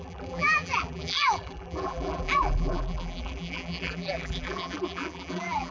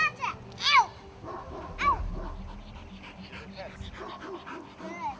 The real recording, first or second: second